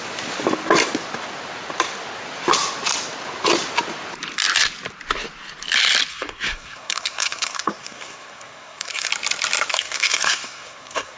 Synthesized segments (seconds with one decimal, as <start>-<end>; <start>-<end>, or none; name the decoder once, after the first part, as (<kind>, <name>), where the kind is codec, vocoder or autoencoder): 6.1-9.1 (codec, SNAC); 9.7-11.2